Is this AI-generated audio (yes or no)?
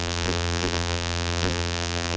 yes